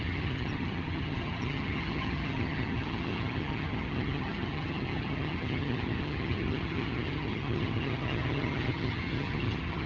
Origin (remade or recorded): remade